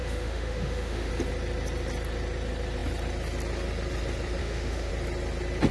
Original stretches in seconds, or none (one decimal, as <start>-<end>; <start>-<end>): 1.1-4.4; 4.9-5.7